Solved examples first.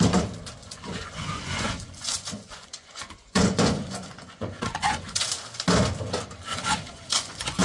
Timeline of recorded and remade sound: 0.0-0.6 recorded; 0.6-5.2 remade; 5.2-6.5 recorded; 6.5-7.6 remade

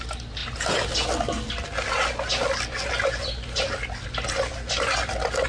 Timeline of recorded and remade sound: 0.0-5.5 recorded

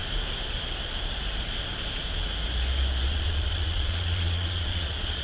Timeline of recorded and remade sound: 0.0-3.1 recorded; 3.1-5.2 remade

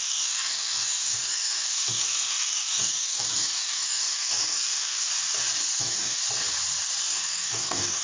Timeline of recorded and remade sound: 0.0-5.1 remade; 5.1-5.8 recorded; 5.8-6.2 remade; 6.2-7.0 recorded; 7.0-8.0 remade

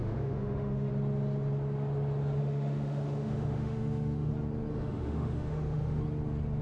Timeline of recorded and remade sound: 0.0-0.9 remade; 0.9-2.4 recorded; 2.4-4.3 remade; 4.3-4.7 recorded; 4.7-6.0 remade; 6.0-6.6 recorded

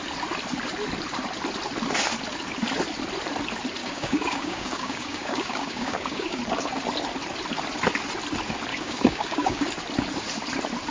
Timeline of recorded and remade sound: 0.0-3.8 recorded; 3.8-6.4 remade; 6.4-8.7 recorded; 8.7-9.7 remade; 9.7-10.9 recorded

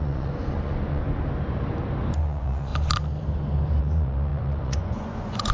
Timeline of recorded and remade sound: 0.0-1.0 remade; 1.0-2.2 recorded; 2.2-2.7 remade; 2.7-3.8 recorded; 3.8-5.5 remade